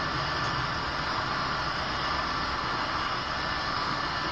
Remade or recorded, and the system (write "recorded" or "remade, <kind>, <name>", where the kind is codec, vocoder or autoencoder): recorded